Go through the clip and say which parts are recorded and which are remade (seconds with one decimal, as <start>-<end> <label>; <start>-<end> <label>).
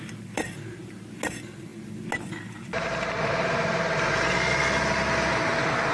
0.0-5.9 recorded